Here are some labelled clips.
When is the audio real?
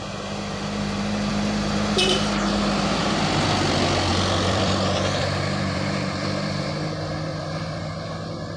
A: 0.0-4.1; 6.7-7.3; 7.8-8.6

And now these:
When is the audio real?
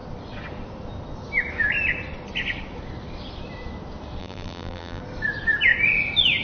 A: 0.0-4.2; 5.0-6.4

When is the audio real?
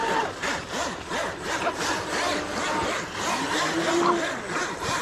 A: 2.5-4.6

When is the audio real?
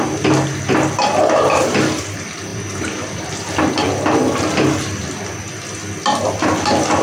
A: 0.0-2.5; 3.3-7.0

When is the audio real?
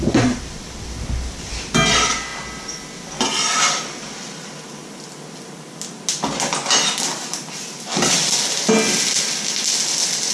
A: 0.0-10.3